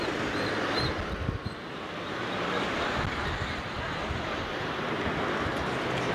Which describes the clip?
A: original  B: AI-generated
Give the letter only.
A